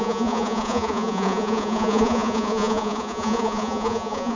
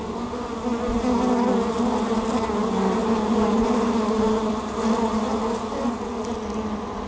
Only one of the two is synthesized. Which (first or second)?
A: first